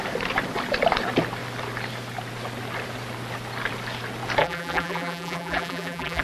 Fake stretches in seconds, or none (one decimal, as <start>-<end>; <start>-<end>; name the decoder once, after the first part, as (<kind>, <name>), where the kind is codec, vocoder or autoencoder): 4.4-6.2 (vocoder, BigVGAN v2)